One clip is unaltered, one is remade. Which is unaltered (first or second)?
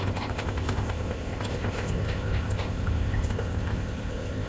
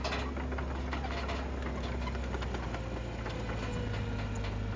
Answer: second